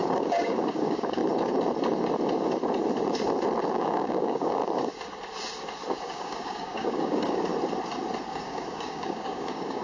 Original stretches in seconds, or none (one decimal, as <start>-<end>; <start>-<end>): 1.2-3.6; 4.6-5.9; 7.5-8.2